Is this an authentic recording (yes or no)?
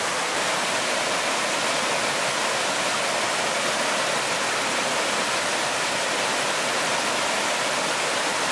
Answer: yes